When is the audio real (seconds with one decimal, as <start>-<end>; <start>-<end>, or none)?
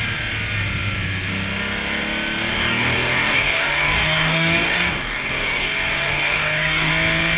0.0-2.5; 6.9-7.4